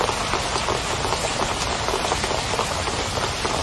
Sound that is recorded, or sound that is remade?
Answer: recorded